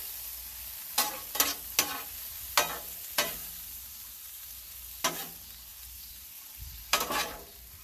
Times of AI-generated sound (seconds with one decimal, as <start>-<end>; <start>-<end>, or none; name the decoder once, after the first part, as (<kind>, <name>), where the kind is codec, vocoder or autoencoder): 3.4-4.8 (vocoder, BigVGAN v2); 5.7-7.1

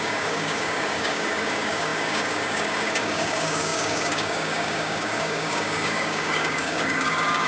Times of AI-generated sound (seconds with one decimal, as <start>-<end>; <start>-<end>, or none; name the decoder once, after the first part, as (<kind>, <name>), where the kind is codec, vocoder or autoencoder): 0.0-7.5 (codec, DAC)

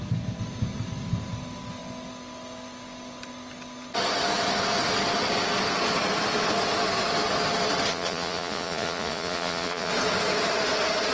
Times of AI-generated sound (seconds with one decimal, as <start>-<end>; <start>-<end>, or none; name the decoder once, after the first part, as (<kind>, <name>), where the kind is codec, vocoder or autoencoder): 7.9-9.9 (vocoder, Vocos)

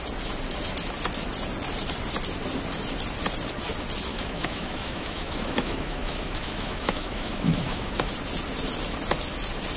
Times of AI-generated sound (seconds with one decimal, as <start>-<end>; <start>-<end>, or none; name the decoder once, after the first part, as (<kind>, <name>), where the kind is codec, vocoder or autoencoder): 4.1-8.1 (autoencoder, DAC-VAE)

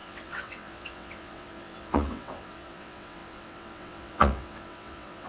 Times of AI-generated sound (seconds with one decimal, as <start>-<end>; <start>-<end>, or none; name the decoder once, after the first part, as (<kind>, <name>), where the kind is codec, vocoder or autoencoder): 0.0-5.3 (vocoder, WaveNeXt)

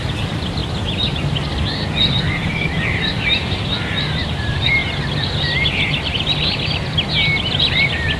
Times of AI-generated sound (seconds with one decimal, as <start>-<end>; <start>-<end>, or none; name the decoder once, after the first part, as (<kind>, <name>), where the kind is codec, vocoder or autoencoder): 0.0-0.6 (vocoder, BigVGAN v2); 2.2-4.8; 7.6-8.2

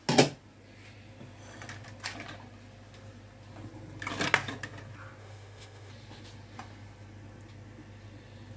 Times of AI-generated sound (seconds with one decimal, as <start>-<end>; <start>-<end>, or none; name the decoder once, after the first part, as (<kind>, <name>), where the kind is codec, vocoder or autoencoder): 5.2-5.9 (autoencoder, DAC-VAE)